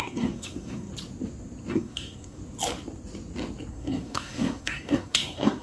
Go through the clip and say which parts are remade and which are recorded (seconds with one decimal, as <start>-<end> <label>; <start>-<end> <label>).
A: 0.0-0.9 remade; 0.9-1.7 recorded; 1.7-2.4 remade; 2.4-3.7 recorded; 3.7-5.6 remade